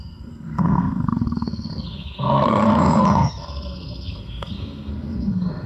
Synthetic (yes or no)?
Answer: yes